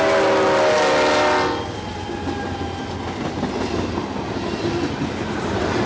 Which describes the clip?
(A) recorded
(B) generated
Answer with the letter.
A